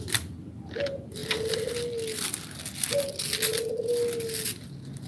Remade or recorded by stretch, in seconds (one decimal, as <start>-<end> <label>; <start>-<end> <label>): 0.0-5.1 recorded